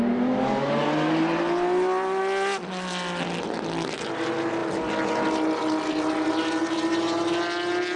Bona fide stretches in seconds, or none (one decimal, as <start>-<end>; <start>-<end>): 0.0-8.0